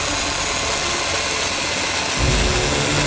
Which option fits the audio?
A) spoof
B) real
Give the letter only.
B